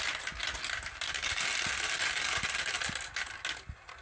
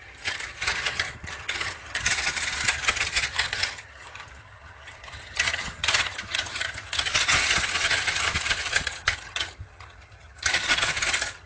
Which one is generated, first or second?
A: second